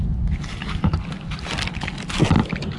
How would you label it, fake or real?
real